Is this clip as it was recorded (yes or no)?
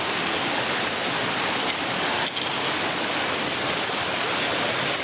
yes